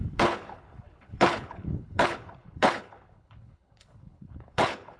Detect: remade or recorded remade